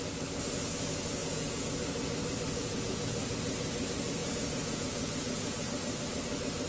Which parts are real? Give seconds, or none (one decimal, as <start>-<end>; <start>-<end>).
0.0-1.2; 1.7-2.6; 3.3-4.2; 5.5-6.7